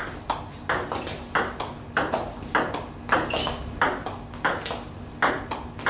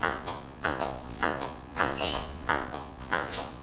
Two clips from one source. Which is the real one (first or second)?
first